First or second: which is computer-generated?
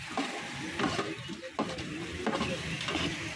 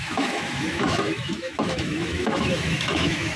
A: second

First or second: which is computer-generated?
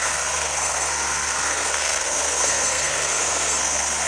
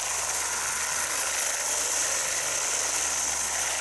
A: first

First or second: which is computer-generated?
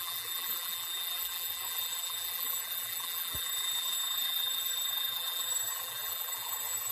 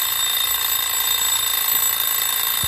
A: first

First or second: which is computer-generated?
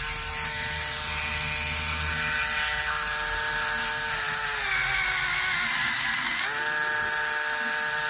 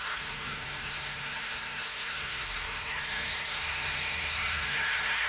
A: second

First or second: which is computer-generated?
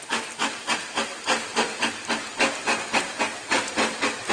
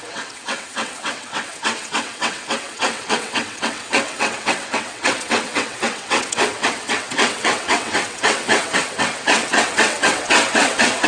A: second